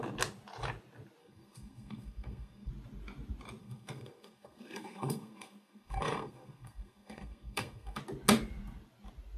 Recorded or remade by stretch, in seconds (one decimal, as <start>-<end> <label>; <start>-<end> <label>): 0.0-1.2 recorded; 1.2-2.7 remade; 2.7-3.6 recorded; 3.6-8.0 remade; 8.0-9.4 recorded